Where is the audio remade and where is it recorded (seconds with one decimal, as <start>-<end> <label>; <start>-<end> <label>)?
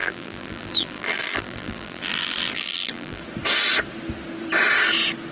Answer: 0.0-3.2 remade; 3.2-5.3 recorded